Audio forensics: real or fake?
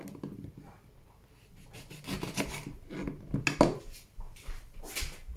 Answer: real